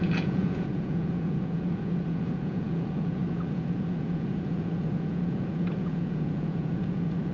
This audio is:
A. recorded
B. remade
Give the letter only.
B